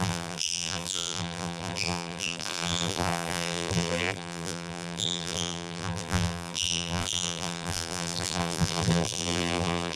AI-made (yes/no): yes